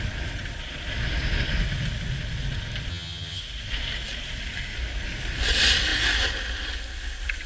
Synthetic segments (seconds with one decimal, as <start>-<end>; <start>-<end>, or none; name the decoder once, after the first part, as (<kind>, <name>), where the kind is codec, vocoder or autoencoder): 2.9-3.4 (vocoder, HiFi-GAN)